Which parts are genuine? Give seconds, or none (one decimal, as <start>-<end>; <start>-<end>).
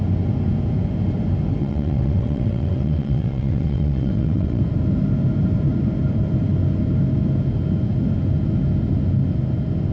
0.0-1.6; 4.6-9.9